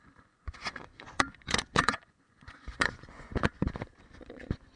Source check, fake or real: fake